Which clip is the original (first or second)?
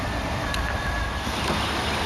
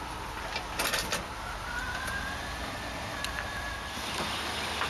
second